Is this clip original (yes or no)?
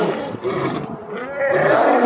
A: yes